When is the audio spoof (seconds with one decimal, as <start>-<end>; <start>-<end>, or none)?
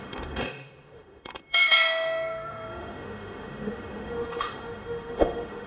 0.0-5.7